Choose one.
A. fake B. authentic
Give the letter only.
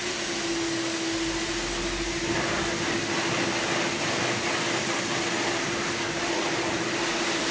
B